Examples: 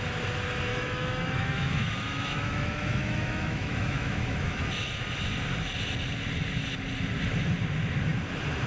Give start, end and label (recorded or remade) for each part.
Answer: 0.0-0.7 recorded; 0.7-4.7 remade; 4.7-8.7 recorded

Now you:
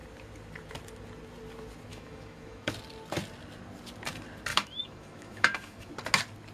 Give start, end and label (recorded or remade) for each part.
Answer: 0.0-1.9 recorded; 1.9-2.7 remade; 2.7-4.5 recorded; 4.5-5.9 remade; 5.9-6.5 recorded

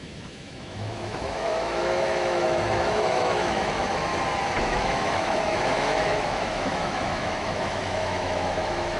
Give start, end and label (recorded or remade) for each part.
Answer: 0.0-4.1 remade; 4.1-4.6 recorded; 4.6-9.0 remade

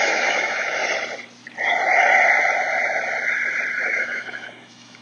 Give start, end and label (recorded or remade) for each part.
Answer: 0.0-0.8 remade; 0.8-3.8 recorded; 3.8-5.0 remade

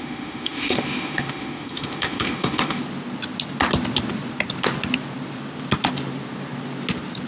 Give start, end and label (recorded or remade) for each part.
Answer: 0.0-2.8 remade; 2.8-7.3 recorded

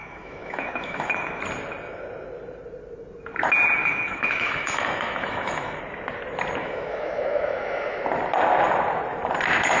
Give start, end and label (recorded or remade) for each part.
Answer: 0.0-1.4 remade; 1.4-3.8 recorded; 3.8-5.8 remade; 5.8-6.6 recorded; 6.6-8.0 remade; 8.0-9.8 recorded

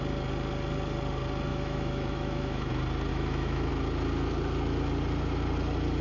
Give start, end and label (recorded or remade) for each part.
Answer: 0.0-1.5 recorded; 1.5-2.7 remade; 2.7-3.1 recorded; 3.1-3.7 remade; 3.7-6.0 recorded